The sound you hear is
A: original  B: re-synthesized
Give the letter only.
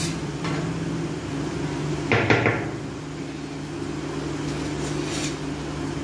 A